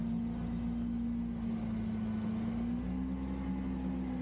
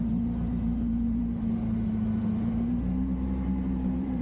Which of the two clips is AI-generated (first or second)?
second